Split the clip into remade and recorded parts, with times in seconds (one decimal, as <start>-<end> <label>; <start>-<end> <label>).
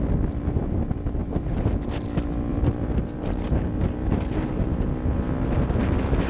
0.0-1.2 recorded; 1.2-1.9 remade; 1.9-2.5 recorded; 2.5-5.8 remade; 5.8-6.3 recorded